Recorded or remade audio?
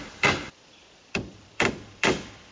remade